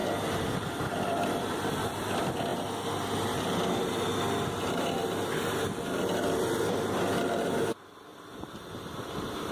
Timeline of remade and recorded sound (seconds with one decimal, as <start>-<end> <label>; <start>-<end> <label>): 0.0-2.0 remade; 2.0-8.1 recorded; 8.1-9.5 remade